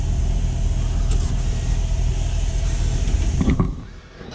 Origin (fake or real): real